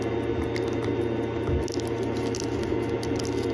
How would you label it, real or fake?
real